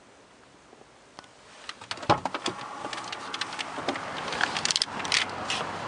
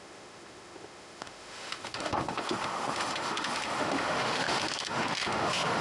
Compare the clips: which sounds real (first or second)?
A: first